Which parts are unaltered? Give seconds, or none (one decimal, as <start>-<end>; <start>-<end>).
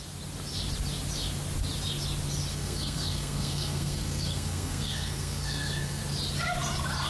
0.0-2.5; 6.0-7.1